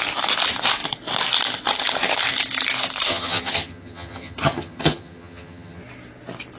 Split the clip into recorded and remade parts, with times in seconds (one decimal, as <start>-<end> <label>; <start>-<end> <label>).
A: 0.0-3.1 recorded; 3.1-5.8 remade; 5.8-6.6 recorded